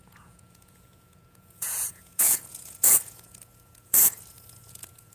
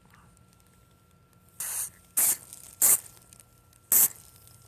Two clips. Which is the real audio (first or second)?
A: second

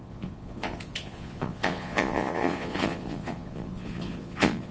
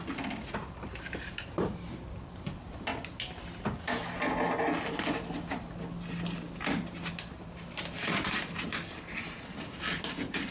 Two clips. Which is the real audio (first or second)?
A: second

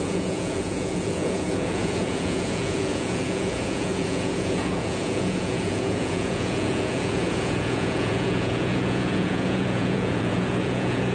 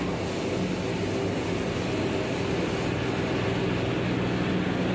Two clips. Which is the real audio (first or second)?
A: second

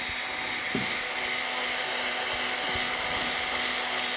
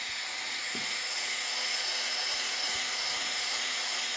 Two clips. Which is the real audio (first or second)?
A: first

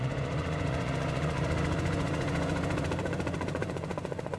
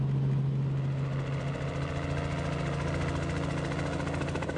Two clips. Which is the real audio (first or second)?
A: second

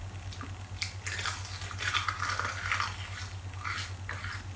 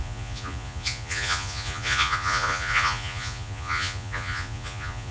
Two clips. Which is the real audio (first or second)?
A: first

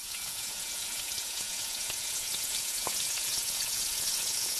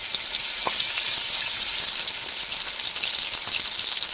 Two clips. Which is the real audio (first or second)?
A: second